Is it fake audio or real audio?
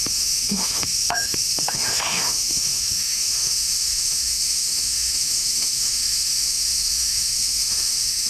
fake